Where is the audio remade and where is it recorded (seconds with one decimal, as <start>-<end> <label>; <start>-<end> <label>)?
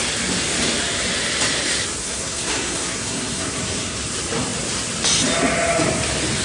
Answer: 0.0-2.0 recorded; 2.0-4.0 remade; 4.0-6.4 recorded